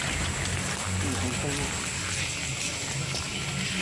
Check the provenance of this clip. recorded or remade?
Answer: recorded